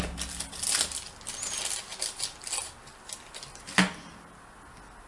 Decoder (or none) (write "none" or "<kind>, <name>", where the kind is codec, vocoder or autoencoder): none